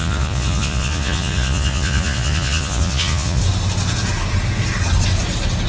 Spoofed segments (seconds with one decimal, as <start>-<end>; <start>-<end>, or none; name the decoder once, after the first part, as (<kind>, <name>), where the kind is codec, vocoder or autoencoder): 0.0-3.4 (vocoder, Vocos)